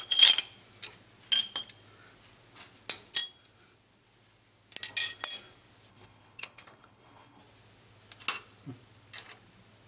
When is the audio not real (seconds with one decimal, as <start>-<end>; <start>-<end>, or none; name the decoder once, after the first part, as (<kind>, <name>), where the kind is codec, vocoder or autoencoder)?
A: 5.9-7.4 (codec, HILCodec)